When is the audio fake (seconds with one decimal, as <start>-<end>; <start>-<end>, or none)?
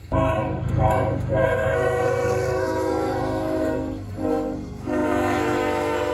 0.0-6.1